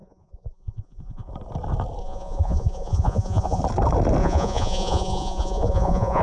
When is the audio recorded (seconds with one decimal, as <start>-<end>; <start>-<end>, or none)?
1.3-2.0; 3.6-4.2